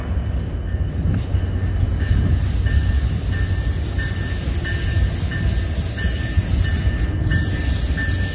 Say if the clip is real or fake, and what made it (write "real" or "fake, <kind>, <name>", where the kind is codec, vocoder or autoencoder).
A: real